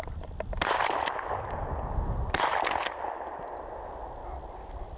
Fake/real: real